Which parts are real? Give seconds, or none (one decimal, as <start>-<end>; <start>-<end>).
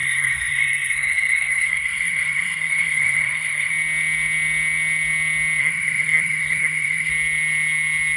3.7-5.6; 7.1-8.2